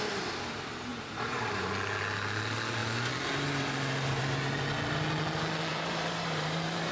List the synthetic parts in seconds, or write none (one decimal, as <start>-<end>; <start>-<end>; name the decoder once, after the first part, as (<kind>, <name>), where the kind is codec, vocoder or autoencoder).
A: 0.9-1.7 (vocoder, BigVGAN v2); 5.7-6.9